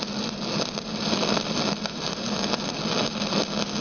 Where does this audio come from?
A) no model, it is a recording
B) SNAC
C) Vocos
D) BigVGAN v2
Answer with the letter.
A